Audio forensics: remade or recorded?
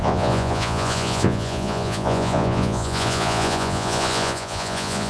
remade